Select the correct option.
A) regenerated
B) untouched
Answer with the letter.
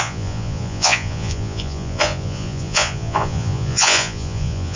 A